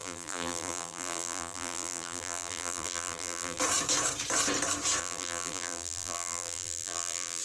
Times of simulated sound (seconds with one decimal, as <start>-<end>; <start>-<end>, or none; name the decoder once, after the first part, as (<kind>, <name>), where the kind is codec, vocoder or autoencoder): 0.0-3.6 (vocoder, BigVGAN v2); 5.0-7.4